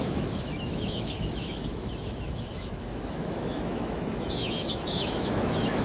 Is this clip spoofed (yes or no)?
yes